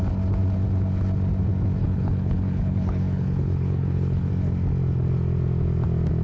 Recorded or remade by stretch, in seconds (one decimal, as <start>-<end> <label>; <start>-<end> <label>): 0.0-1.8 recorded; 1.8-4.3 remade; 4.3-6.2 recorded